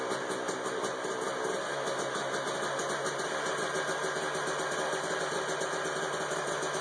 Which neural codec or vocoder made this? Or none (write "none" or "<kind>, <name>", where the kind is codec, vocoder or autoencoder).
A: none